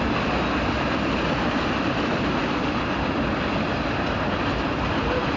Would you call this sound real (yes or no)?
yes